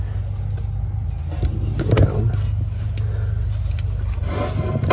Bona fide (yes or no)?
yes